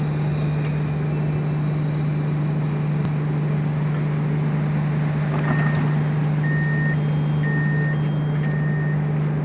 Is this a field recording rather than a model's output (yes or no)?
yes